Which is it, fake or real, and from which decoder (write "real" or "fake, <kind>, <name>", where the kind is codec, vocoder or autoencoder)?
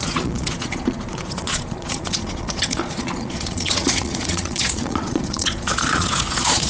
fake, vocoder, Vocos